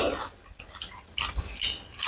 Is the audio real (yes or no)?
yes